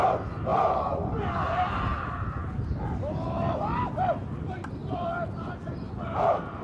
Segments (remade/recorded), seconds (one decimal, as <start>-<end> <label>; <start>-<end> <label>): 0.0-6.6 recorded